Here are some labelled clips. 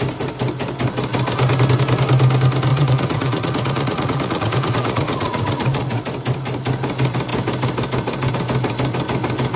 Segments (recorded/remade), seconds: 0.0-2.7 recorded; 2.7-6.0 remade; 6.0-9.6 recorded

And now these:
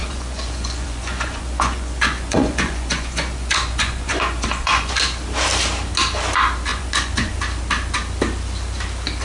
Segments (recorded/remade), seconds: 0.0-4.9 remade; 4.9-6.7 recorded; 6.7-7.3 remade; 7.3-9.2 recorded

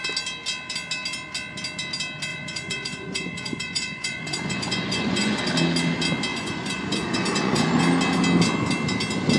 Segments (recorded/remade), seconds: 0.0-2.3 recorded; 2.3-5.4 remade; 5.4-6.3 recorded; 6.3-7.8 remade; 7.8-9.4 recorded

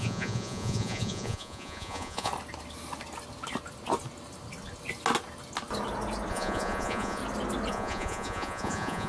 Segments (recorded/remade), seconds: 0.0-2.3 remade; 2.3-6.3 recorded; 6.3-7.2 remade; 7.2-7.7 recorded; 7.7-9.1 remade